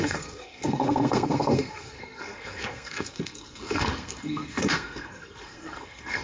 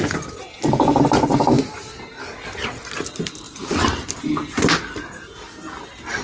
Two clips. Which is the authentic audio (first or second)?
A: second